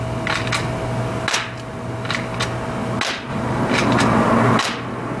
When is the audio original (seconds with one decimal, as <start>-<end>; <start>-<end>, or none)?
0.0-3.3; 4.6-5.2